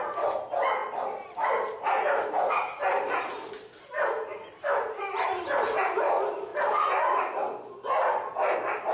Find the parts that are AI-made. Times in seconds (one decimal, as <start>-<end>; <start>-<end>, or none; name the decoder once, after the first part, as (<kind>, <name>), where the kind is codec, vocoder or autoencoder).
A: none